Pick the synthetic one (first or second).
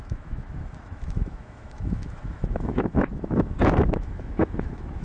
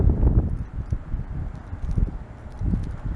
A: first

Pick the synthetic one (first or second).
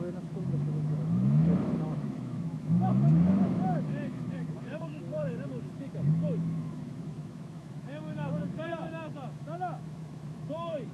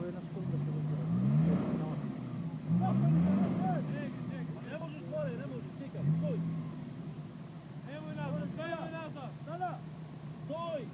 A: first